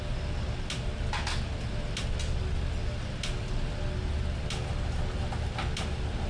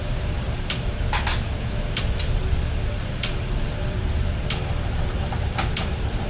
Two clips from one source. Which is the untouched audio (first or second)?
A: first